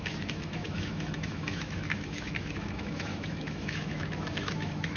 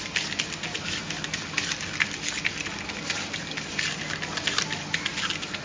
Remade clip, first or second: first